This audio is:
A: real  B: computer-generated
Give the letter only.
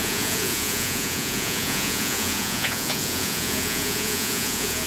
B